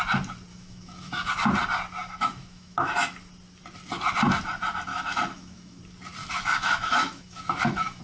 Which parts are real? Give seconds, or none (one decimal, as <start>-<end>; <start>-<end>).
0.0-0.5; 1.3-2.0; 2.9-4.9; 5.8-6.2